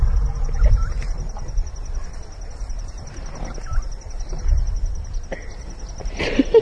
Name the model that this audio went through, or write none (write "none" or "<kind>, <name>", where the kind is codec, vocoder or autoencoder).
none